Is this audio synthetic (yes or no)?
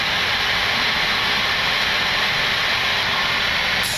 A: no